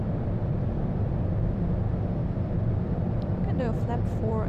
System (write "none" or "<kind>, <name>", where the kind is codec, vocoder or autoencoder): vocoder, BigVGAN v2